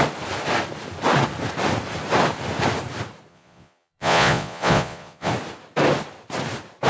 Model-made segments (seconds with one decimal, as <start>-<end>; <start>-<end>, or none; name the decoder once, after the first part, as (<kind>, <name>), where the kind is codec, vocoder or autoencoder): 3.3-5.3 (vocoder, Vocos)